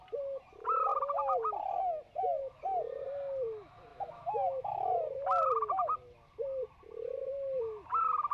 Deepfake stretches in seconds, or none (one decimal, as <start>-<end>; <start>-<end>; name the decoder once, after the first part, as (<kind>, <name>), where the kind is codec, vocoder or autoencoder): 3.9-4.9 (autoencoder, DAC-VAE)